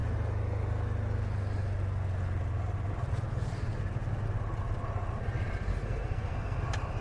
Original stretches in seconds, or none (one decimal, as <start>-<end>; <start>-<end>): 0.0-5.7; 6.6-7.0